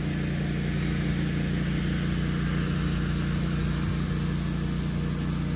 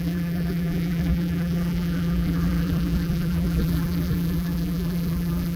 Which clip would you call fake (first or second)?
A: second